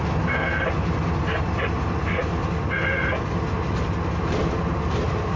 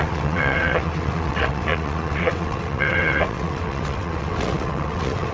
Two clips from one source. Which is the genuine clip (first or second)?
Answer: first